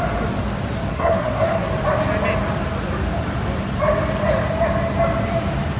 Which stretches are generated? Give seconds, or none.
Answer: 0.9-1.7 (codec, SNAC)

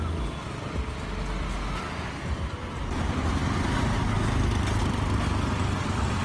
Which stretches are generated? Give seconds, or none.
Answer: none

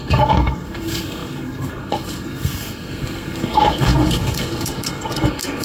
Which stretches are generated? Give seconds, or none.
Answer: 0.0-5.6 (codec, SNAC)

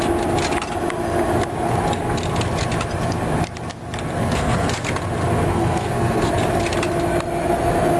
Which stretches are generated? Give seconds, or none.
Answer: 4.2-4.9 (codec, SNAC); 5.5-6.3

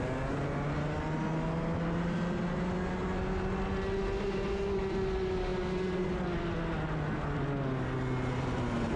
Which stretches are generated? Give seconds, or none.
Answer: none

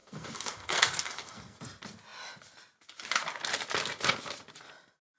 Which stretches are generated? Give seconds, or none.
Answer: 0.0-1.6 (codec, SNAC)